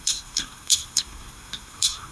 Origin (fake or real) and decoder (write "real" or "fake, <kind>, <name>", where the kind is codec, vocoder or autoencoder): fake, codec, SNAC